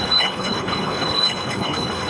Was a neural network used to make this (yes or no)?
yes